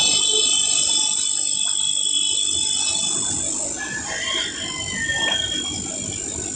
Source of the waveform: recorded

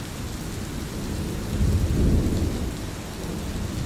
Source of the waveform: recorded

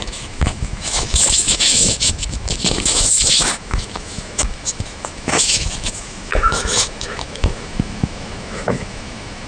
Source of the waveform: remade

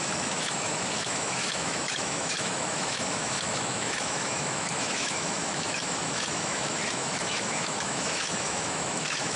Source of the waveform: remade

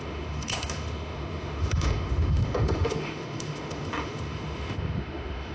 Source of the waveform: remade